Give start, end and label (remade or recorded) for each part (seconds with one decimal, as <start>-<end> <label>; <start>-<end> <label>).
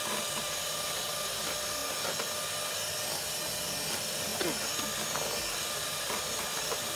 0.0-7.0 recorded